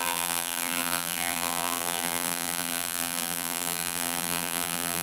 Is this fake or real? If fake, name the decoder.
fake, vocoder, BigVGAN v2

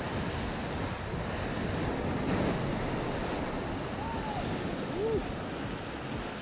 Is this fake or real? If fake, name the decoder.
real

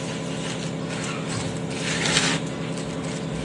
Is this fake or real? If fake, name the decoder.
real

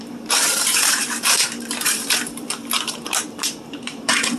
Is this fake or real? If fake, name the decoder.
fake, vocoder, BigVGAN v2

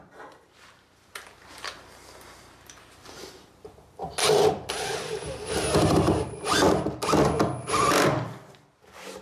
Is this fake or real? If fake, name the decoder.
fake, vocoder, BigVGAN v2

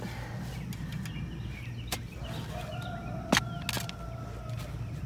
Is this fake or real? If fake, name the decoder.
real